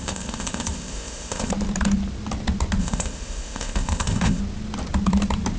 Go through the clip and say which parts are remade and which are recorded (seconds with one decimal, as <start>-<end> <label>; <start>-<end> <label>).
0.0-1.5 remade; 1.5-2.8 recorded; 2.8-4.4 remade; 4.4-5.6 recorded